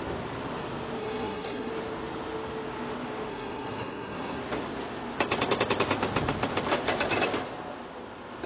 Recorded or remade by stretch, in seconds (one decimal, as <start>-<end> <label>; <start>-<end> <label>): 0.0-1.0 recorded; 1.0-1.7 remade; 1.7-3.3 recorded; 3.3-4.4 remade; 4.4-8.5 recorded